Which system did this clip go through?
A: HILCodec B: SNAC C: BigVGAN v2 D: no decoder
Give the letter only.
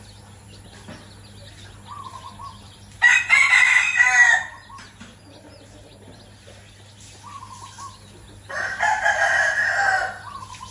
D